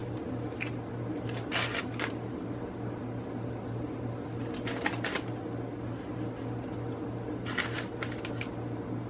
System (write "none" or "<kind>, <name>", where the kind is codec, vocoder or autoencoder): none